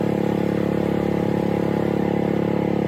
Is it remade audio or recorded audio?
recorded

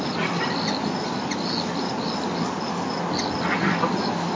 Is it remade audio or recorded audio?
recorded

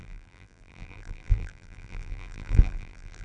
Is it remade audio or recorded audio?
remade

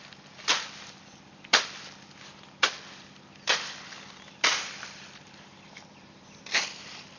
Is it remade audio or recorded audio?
remade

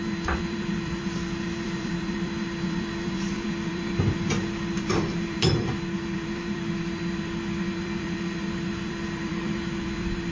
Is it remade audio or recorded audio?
remade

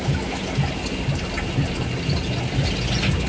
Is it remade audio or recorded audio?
recorded